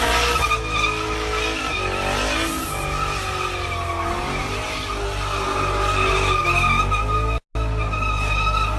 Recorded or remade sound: recorded